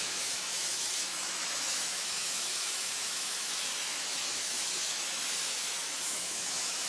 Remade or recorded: remade